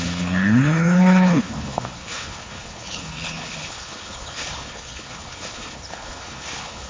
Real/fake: fake